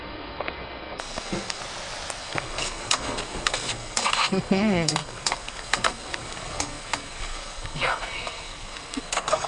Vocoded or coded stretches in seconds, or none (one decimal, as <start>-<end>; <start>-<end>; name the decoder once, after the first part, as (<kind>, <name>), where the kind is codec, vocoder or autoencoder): 0.0-1.6 (codec, SNAC); 2.2-9.5